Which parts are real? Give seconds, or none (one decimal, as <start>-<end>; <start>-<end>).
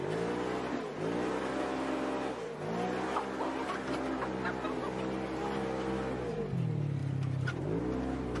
0.0-8.4